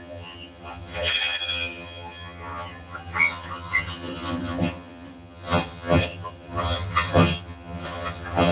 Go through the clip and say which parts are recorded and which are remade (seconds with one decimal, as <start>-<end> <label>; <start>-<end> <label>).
0.0-8.5 remade